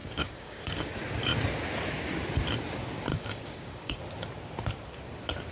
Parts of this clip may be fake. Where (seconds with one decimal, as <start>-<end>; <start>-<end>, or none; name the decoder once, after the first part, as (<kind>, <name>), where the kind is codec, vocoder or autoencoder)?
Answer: 0.0-0.9 (codec, DAC); 3.1-4.0